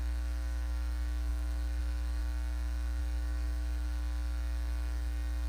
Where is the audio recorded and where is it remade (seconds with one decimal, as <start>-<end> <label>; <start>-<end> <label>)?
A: 0.0-5.5 remade